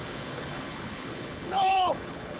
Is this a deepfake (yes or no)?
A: yes